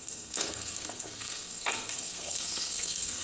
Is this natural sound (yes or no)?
no